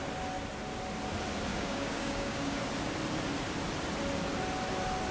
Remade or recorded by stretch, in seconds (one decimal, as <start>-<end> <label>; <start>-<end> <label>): 0.0-1.5 recorded; 1.5-2.6 remade; 2.6-5.1 recorded

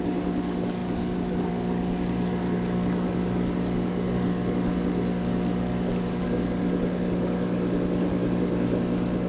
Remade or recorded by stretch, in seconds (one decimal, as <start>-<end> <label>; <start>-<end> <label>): 0.0-9.3 remade

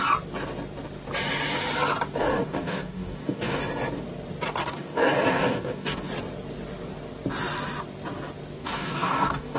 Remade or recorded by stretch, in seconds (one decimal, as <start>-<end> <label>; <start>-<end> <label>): 0.0-2.2 recorded; 2.2-3.6 remade; 3.6-4.6 recorded; 4.6-6.1 remade; 6.1-8.6 recorded; 8.6-9.6 remade

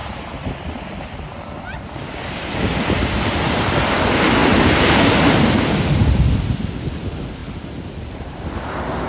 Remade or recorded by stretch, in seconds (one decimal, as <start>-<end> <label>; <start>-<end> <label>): 0.0-9.1 recorded